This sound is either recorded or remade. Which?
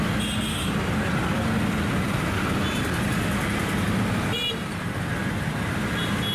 recorded